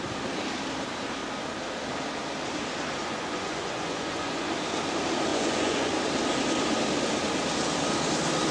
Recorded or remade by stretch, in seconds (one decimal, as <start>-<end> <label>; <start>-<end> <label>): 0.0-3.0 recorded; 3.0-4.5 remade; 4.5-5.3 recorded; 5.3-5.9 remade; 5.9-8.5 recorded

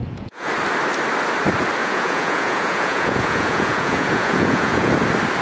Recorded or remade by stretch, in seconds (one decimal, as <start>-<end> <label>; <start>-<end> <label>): 0.0-0.5 remade; 0.5-1.8 recorded; 1.8-4.9 remade; 4.9-5.4 recorded

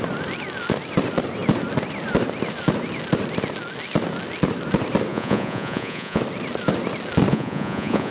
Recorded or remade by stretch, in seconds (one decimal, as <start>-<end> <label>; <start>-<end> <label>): 0.0-5.1 recorded; 5.1-6.2 remade; 6.2-7.3 recorded; 7.3-8.1 remade

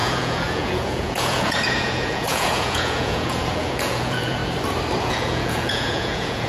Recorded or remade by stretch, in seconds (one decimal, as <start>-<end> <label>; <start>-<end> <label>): 0.0-4.4 remade; 4.4-5.0 recorded; 5.0-6.5 remade

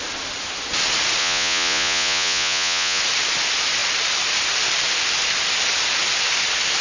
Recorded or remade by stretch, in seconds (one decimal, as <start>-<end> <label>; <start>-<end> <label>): 0.0-1.2 recorded; 1.2-3.0 remade; 3.0-6.8 recorded

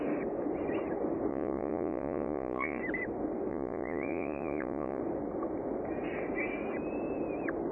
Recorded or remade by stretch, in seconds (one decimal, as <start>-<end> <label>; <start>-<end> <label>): 0.0-1.3 recorded; 1.3-2.8 remade; 2.8-3.5 recorded; 3.5-5.0 remade; 5.0-7.7 recorded

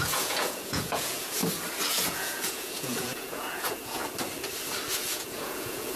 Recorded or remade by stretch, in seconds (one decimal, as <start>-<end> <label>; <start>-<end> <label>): 0.0-1.4 remade; 1.4-1.9 recorded; 1.9-4.0 remade; 4.0-4.9 recorded; 4.9-6.0 remade